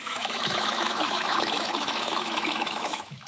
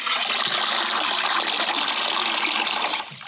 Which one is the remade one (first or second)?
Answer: first